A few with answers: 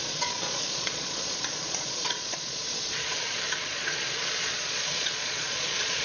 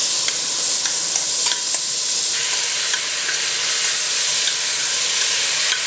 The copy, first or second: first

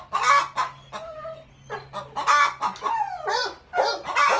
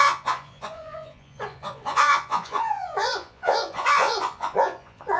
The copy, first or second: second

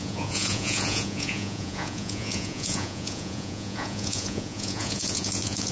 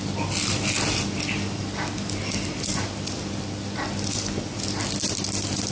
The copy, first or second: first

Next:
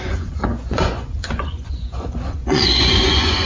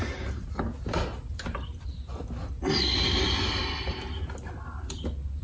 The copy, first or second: first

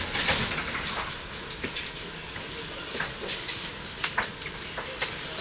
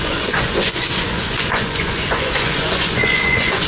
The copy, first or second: second